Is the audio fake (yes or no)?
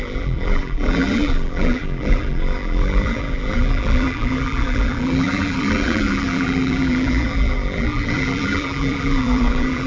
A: yes